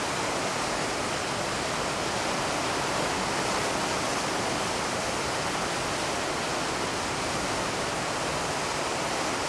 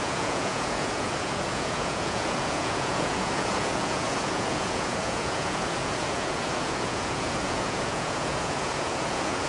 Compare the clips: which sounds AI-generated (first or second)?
second